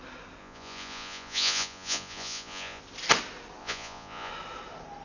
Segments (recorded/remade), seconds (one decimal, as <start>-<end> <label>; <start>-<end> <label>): 0.0-0.4 recorded; 0.4-2.8 remade; 2.8-3.6 recorded; 3.6-4.3 remade; 4.3-5.0 recorded